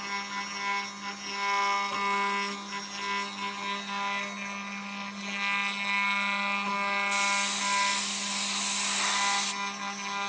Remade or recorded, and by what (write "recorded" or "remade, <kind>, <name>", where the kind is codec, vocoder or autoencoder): recorded